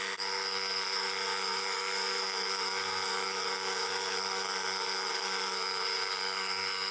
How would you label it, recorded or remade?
remade